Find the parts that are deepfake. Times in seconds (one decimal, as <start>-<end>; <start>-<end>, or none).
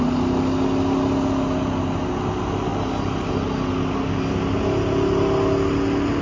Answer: none